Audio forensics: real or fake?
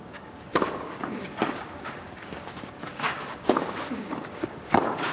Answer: fake